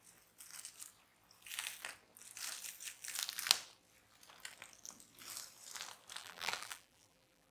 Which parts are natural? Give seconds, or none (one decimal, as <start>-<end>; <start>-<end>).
0.0-6.2